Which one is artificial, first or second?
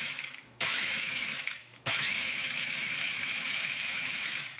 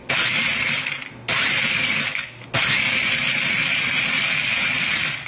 first